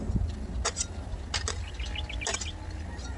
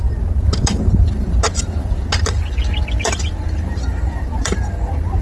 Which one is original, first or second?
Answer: first